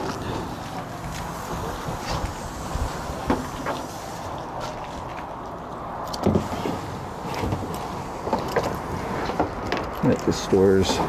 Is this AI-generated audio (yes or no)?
no